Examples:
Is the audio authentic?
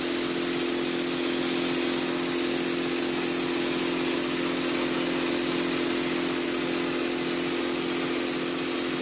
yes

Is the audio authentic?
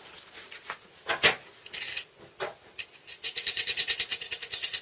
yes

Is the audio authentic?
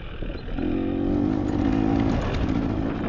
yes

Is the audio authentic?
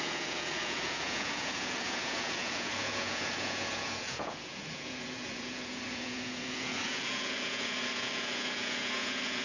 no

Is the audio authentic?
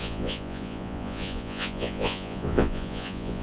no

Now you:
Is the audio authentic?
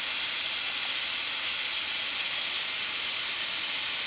yes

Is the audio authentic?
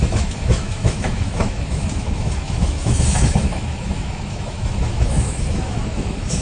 no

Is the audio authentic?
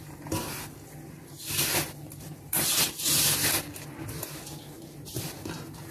yes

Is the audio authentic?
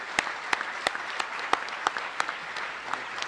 yes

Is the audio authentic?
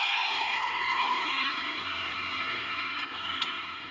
no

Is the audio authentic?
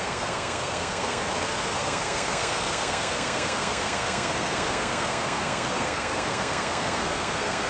no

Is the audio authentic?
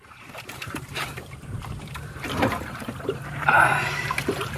no